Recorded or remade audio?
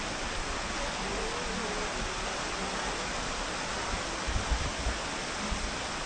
recorded